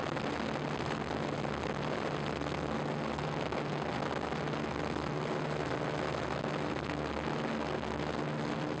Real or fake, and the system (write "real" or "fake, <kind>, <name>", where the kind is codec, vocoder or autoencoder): real